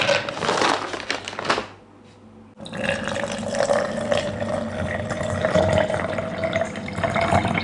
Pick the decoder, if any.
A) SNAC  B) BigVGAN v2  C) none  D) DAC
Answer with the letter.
C